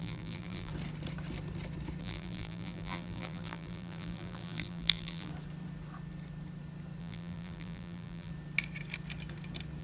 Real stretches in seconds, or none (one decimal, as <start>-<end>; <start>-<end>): 0.7-2.0; 5.3-7.0; 8.3-9.8